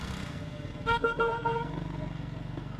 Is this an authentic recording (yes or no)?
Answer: no